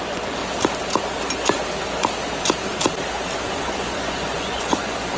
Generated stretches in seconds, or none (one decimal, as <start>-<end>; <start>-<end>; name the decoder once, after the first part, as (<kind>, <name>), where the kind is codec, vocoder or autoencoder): 0.0-0.4 (vocoder, Vocos); 3.5-5.2